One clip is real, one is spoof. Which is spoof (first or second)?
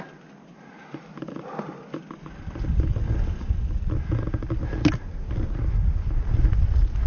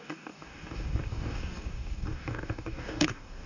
second